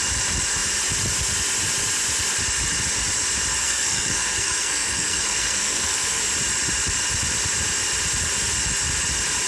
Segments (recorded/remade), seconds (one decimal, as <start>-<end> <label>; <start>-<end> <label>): 0.0-3.6 recorded; 3.6-6.2 remade; 6.2-9.5 recorded